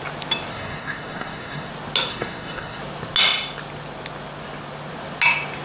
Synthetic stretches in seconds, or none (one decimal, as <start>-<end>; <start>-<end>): 0.5-1.7; 2.1-2.8